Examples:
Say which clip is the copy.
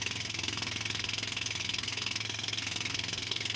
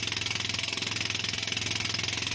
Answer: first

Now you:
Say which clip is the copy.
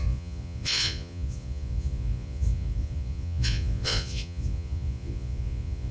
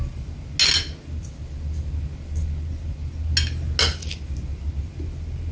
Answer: first